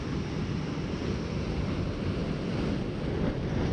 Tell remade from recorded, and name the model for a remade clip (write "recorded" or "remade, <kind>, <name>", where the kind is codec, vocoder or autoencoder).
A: recorded